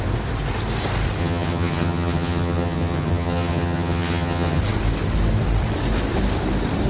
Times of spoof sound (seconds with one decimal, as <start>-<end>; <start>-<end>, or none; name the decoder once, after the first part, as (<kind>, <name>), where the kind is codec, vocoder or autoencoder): 1.2-4.6 (vocoder, HiFi-GAN)